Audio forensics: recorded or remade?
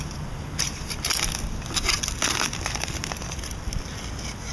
recorded